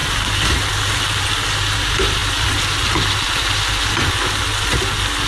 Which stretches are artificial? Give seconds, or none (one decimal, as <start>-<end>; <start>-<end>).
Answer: none